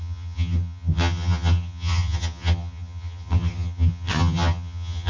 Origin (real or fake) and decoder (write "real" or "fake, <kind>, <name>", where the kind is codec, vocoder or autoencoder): fake, vocoder, HiFi-GAN